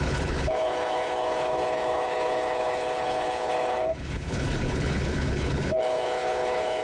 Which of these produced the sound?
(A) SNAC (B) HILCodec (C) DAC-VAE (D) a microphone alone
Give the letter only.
B